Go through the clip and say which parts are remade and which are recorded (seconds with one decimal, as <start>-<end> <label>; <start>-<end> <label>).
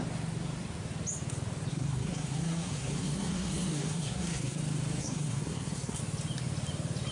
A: 0.0-1.7 recorded; 1.7-4.6 remade; 4.6-5.0 recorded; 5.0-6.0 remade; 6.0-7.1 recorded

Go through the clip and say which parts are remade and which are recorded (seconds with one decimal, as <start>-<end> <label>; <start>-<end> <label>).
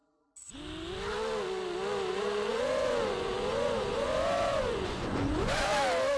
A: 0.0-2.1 recorded; 2.1-5.7 remade; 5.7-6.2 recorded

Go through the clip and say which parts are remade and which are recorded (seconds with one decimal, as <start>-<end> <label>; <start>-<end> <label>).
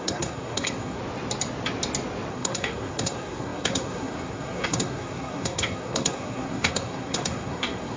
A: 0.0-1.0 remade; 1.0-2.3 recorded; 2.3-8.0 remade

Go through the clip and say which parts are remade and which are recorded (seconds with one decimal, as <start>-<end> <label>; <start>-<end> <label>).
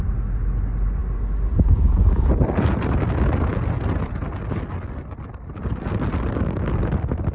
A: 0.0-7.3 recorded